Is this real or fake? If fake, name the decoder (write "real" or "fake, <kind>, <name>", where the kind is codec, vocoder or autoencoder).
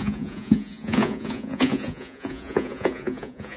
fake, vocoder, Vocos